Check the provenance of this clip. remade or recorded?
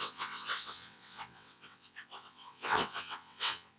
remade